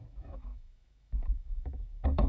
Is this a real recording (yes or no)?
no